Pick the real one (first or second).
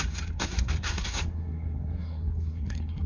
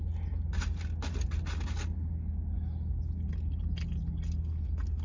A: second